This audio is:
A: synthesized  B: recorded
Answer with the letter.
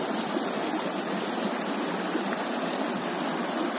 B